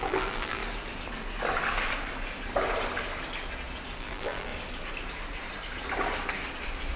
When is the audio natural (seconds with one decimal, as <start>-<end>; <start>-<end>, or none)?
0.6-4.0; 4.5-7.0